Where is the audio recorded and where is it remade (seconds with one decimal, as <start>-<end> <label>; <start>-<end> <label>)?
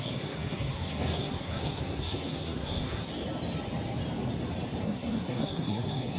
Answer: 0.0-3.0 remade; 3.0-4.8 recorded; 4.8-6.2 remade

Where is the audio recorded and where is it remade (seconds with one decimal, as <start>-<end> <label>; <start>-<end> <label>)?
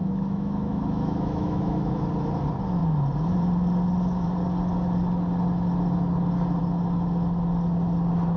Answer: 0.0-2.0 remade; 2.0-8.4 recorded